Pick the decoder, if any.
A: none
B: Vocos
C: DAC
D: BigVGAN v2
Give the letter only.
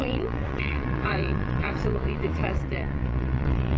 B